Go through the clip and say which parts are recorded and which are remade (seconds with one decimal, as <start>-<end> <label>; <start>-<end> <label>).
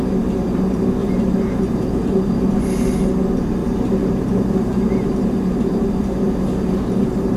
0.0-1.0 recorded; 1.0-2.6 remade; 2.6-3.6 recorded; 3.6-7.4 remade